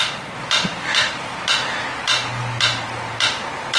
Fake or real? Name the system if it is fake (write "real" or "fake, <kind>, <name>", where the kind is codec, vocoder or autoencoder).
real